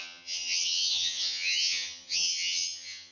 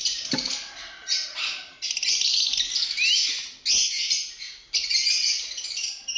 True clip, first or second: second